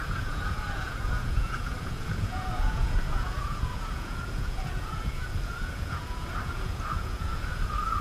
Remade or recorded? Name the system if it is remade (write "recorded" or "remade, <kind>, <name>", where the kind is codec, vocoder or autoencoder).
remade, vocoder, Vocos